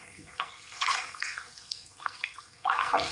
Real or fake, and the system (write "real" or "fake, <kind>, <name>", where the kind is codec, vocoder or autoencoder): fake, codec, SNAC